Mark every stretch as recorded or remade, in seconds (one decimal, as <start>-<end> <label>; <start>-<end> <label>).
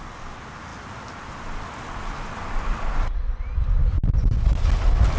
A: 0.0-5.2 recorded